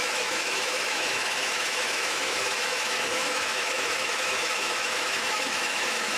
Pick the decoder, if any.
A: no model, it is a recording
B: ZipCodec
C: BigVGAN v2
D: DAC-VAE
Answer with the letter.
D